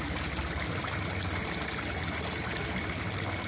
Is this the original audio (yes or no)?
yes